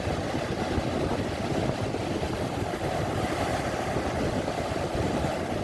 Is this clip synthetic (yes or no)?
no